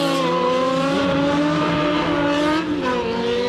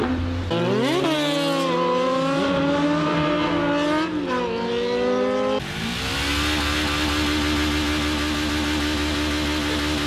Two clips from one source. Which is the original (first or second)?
second